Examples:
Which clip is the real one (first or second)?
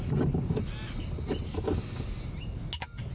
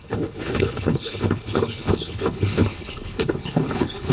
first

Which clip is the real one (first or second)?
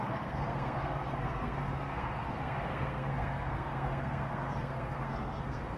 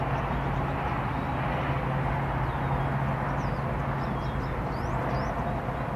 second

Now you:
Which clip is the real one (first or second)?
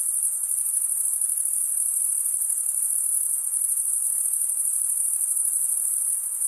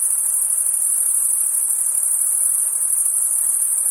second